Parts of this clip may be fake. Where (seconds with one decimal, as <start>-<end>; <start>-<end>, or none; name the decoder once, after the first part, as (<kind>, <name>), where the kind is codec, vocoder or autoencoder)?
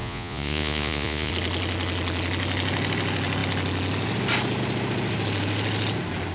0.0-1.3 (vocoder, Vocos)